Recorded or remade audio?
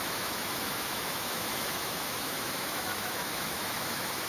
remade